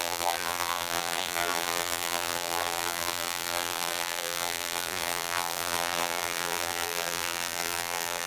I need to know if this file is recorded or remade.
remade